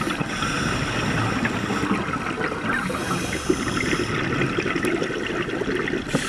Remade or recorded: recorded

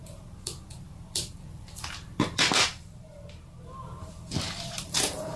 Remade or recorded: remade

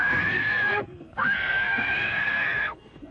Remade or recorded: remade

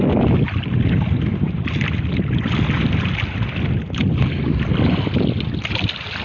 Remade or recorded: recorded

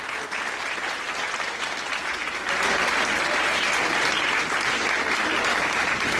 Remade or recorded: recorded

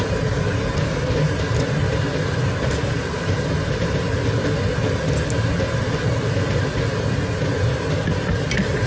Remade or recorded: recorded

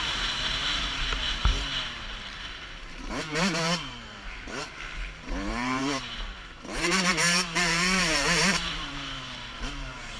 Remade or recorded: remade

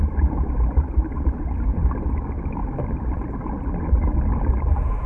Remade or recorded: recorded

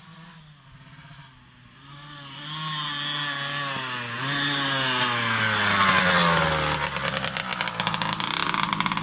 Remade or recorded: recorded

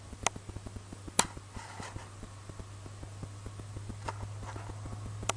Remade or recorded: recorded